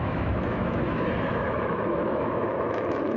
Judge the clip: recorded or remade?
remade